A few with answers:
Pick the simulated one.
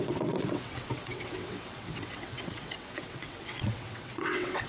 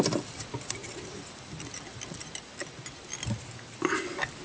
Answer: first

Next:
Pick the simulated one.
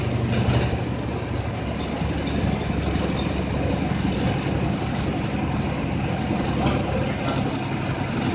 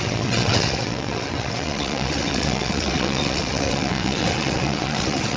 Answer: second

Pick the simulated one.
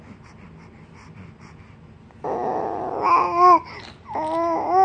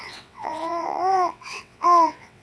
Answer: second